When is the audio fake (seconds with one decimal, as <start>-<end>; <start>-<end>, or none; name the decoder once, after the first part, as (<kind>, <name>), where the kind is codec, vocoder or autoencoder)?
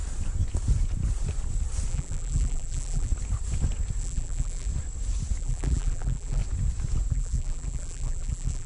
1.9-3.1 (vocoder, BigVGAN v2); 4.0-4.7; 5.4-6.4; 7.1-8.7